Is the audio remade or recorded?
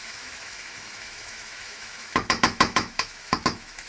remade